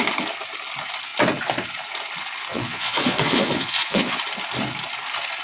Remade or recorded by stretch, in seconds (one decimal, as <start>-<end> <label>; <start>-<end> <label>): 0.0-2.5 recorded; 2.5-4.2 remade; 4.2-5.4 recorded